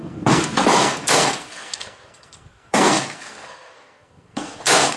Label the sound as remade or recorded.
remade